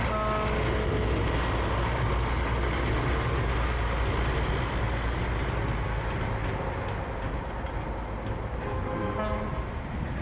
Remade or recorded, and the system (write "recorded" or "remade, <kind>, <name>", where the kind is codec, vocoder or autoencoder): recorded